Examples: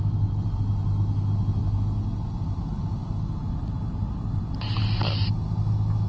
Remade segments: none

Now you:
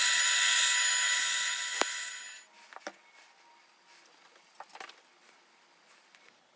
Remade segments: none

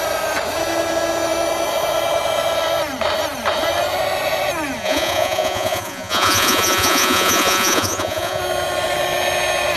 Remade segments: 4.8-8.4 (vocoder, Vocos)

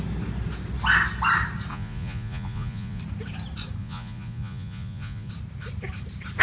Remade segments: 1.7-3.0 (vocoder, Vocos); 3.8-5.3

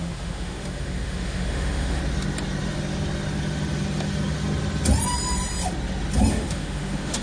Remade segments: 0.0-2.0 (autoencoder, DAC-VAE); 6.3-7.2

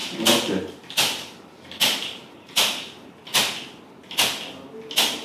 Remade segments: 0.0-3.1 (vocoder, BigVGAN v2)